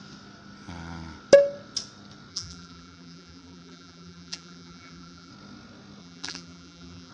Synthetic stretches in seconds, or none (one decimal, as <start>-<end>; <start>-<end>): 2.3-5.3; 6.0-7.1